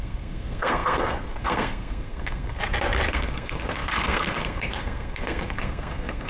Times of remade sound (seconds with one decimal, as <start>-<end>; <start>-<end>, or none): 0.0-2.6; 3.1-6.3